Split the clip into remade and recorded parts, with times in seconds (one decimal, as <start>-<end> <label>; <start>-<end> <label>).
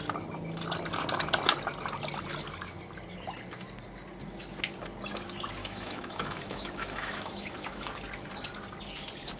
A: 0.0-5.6 recorded; 5.6-7.9 remade; 7.9-9.4 recorded